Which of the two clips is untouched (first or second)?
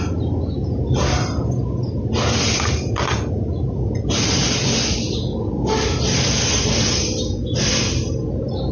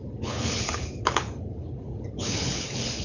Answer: first